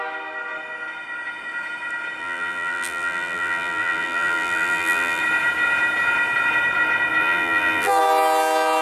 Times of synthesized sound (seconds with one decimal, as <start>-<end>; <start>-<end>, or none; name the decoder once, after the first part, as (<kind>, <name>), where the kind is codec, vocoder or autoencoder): 2.2-5.2 (vocoder, BigVGAN v2); 7.2-8.0